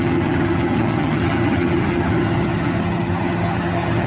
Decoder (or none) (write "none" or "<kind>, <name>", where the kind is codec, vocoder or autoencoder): vocoder, HiFi-GAN